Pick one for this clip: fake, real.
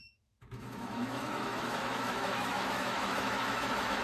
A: fake